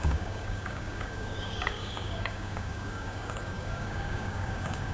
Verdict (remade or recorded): remade